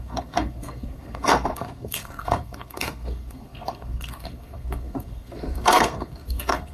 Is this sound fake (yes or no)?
yes